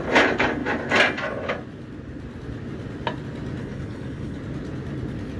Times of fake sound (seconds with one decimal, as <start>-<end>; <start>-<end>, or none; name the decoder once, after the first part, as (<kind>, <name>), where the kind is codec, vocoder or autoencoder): 3.6-4.4 (codec, HILCodec)